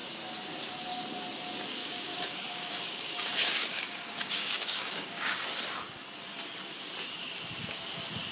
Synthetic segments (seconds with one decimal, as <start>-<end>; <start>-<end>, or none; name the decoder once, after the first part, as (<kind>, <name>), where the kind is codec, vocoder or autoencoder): 1.8-5.4 (codec, DAC)